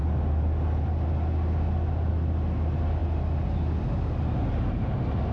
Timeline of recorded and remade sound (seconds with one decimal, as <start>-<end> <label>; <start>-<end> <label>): 0.0-5.3 recorded